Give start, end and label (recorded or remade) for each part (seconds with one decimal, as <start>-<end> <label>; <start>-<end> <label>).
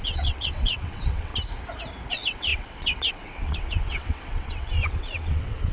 0.0-1.3 remade; 1.3-2.1 recorded; 2.1-5.7 remade